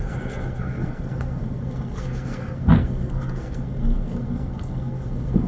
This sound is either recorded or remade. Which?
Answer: remade